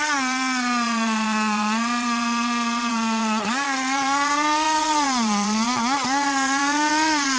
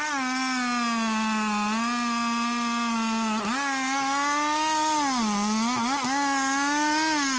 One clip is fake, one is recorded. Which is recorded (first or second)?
second